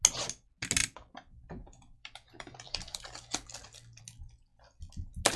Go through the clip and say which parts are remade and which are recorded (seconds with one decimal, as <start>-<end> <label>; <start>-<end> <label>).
0.0-0.8 recorded; 0.8-4.0 remade; 4.0-5.4 recorded

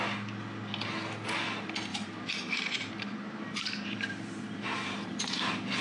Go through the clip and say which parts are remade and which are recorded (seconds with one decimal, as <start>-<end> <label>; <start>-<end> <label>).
0.0-1.9 recorded; 1.9-5.1 remade; 5.1-5.8 recorded

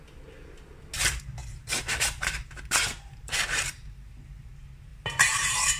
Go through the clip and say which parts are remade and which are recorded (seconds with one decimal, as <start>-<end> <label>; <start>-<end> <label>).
0.0-1.4 recorded; 1.4-4.1 remade; 4.1-4.9 recorded; 4.9-5.8 remade